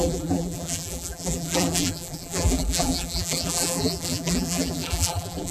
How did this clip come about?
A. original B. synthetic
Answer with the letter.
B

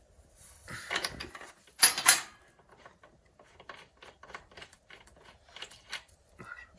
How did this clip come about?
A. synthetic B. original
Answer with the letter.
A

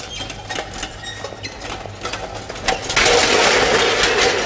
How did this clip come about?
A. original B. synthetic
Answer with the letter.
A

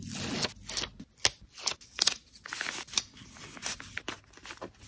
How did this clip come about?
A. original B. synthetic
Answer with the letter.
A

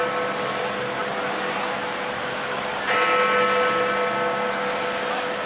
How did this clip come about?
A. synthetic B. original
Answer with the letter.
B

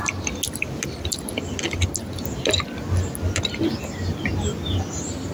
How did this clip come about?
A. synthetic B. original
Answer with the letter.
B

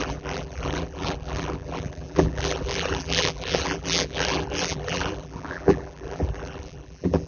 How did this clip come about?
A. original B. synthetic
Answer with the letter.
B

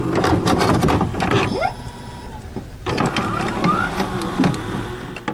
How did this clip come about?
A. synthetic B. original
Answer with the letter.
B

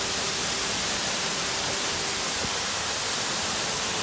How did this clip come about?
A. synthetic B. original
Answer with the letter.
B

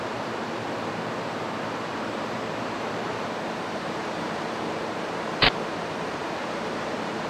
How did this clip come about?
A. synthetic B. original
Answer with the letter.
A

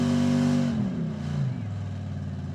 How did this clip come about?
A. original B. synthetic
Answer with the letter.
A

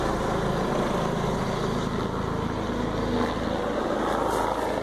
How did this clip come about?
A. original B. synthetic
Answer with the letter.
A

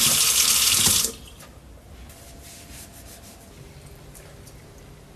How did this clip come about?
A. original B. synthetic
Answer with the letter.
B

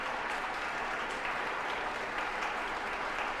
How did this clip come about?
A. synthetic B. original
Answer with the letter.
A